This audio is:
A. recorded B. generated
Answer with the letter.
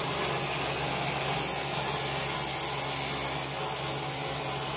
A